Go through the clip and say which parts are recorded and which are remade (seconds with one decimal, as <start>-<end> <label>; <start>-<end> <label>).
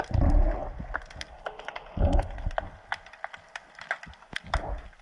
0.0-5.0 recorded